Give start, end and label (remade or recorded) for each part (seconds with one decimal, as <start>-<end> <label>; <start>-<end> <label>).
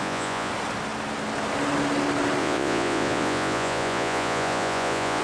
0.0-0.5 remade; 0.5-2.4 recorded; 2.4-5.2 remade